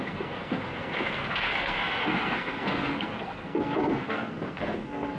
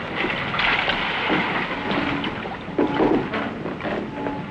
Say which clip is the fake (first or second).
first